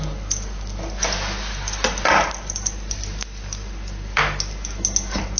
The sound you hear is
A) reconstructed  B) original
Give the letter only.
B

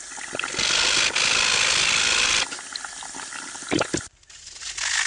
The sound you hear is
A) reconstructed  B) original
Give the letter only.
B